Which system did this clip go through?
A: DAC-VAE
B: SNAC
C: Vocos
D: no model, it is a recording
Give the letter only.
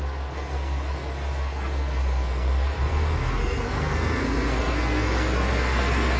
B